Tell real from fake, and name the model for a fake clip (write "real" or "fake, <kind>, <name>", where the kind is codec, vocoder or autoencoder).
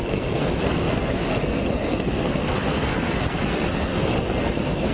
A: fake, codec, SNAC